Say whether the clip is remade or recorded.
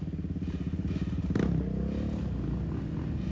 recorded